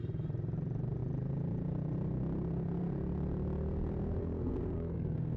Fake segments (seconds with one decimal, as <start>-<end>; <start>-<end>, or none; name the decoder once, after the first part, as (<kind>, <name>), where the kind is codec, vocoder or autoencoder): 4.2-5.4 (codec, SNAC)